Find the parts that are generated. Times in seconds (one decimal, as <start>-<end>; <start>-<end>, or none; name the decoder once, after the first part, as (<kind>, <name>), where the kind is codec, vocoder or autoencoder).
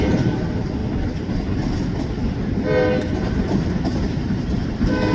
0.0-0.8 (vocoder, BigVGAN v2); 3.0-5.1